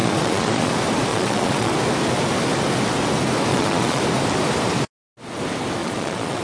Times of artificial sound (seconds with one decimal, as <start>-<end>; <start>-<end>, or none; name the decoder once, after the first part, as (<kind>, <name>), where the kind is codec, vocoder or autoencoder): 0.0-0.7 (vocoder, Vocos); 1.1-1.7; 3.5-4.0; 5.8-6.4